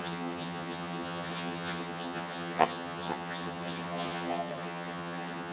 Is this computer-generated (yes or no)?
yes